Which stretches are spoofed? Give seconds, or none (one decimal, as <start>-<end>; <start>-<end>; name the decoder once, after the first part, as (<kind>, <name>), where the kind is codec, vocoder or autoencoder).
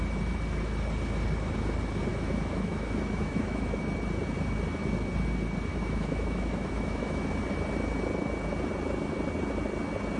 2.1-3.8 (autoencoder, DAC-VAE); 5.7-7.3